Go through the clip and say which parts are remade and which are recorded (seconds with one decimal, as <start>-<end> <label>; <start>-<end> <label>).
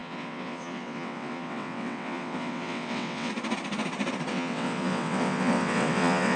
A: 0.0-3.3 remade; 3.3-4.3 recorded; 4.3-6.4 remade